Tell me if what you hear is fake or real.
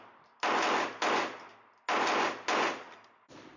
real